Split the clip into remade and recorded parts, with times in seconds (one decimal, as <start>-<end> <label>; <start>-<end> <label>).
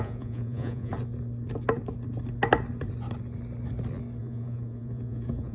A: 0.0-0.9 remade; 0.9-4.2 recorded; 4.2-5.5 remade